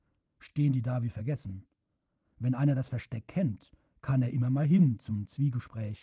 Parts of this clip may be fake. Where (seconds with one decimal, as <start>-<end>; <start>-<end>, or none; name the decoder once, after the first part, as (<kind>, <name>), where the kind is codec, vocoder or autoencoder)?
4.1-5.1 (vocoder, BigVGAN v2)